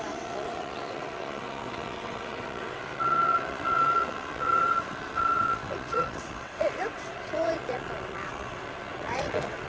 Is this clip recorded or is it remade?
remade